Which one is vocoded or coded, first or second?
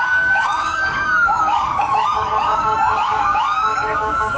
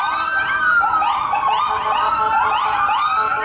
first